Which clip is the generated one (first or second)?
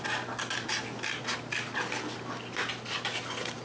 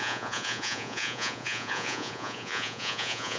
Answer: second